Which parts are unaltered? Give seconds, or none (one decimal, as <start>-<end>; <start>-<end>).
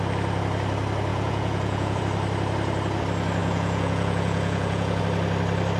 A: 0.0-1.1; 2.0-3.4; 5.0-5.8